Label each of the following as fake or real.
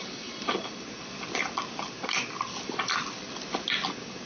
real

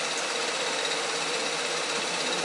real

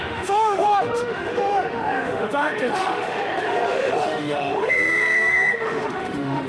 fake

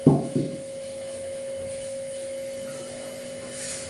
fake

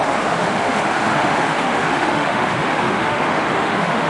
fake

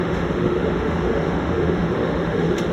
fake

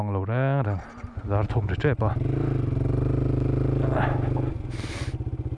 real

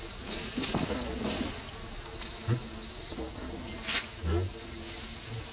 real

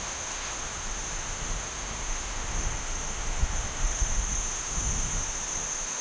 fake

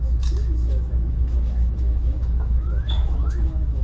fake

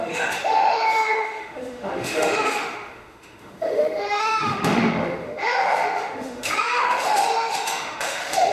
fake